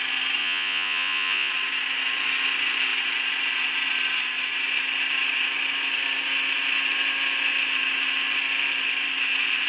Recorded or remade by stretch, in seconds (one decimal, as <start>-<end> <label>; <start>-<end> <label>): 0.0-0.4 recorded; 0.4-1.5 remade; 1.5-9.7 recorded